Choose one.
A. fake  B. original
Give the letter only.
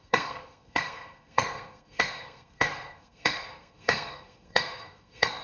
A